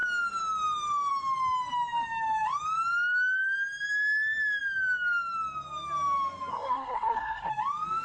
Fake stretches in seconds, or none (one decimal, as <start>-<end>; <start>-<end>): 6.5-7.5